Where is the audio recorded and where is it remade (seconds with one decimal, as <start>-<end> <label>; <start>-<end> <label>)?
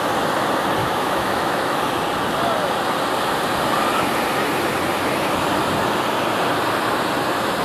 0.0-0.8 recorded; 0.8-1.8 remade; 1.8-7.6 recorded